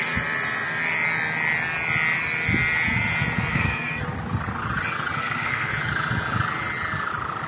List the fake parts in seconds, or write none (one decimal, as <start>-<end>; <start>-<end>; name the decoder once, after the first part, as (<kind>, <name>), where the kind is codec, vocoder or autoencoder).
3.5-4.0 (codec, SNAC); 5.2-5.7